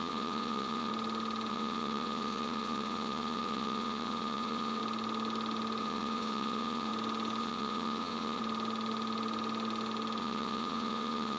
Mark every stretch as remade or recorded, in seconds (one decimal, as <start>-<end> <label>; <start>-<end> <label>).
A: 0.0-0.9 remade; 0.9-1.5 recorded; 1.5-4.8 remade; 4.8-5.8 recorded; 5.8-6.9 remade; 6.9-7.4 recorded; 7.4-8.4 remade; 8.4-10.2 recorded; 10.2-11.4 remade